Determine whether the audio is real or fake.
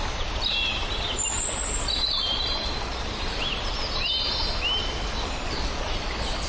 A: real